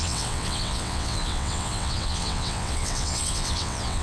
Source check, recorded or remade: remade